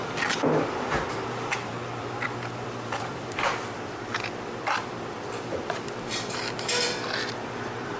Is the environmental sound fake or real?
fake